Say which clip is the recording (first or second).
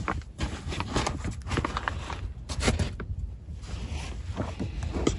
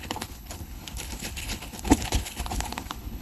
first